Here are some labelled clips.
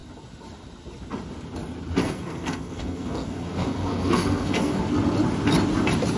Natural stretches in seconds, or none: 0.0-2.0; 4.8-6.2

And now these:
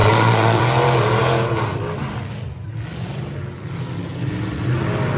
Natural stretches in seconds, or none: 0.6-5.2

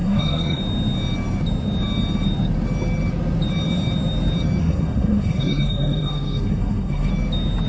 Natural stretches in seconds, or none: 0.6-4.6; 7.1-7.7

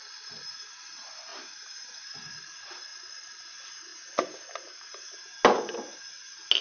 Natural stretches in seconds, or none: 0.0-2.9; 3.5-6.6

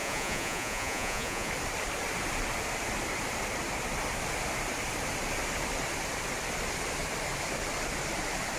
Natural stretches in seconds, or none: 1.5-8.6

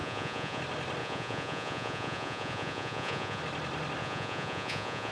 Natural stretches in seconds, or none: 0.6-1.0; 3.4-4.0

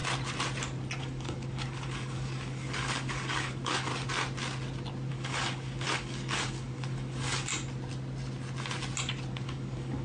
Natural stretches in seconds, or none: 0.0-1.0; 3.9-5.1; 7.5-9.3